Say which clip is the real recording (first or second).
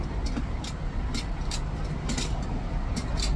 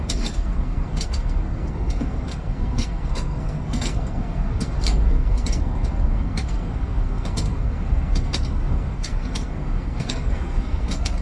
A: first